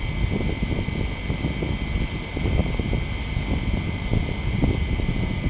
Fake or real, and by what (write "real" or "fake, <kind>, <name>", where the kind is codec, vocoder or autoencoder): real